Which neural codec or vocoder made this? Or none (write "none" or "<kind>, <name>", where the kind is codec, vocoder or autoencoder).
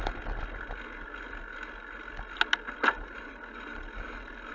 none